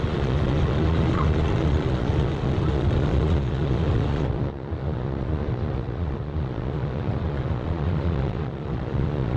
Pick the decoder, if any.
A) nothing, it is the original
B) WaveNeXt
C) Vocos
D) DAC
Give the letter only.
C